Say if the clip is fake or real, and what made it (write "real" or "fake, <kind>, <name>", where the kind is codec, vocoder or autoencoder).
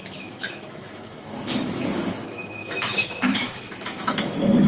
fake, autoencoder, DAC-VAE